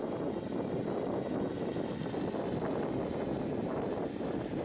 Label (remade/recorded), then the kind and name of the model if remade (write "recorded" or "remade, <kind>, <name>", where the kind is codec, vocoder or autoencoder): recorded